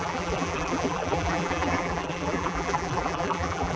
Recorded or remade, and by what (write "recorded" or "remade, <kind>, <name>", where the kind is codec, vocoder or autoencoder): remade, vocoder, BigVGAN v2